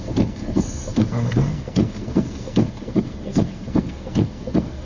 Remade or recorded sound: remade